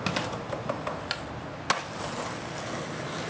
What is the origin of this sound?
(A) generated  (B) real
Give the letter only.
B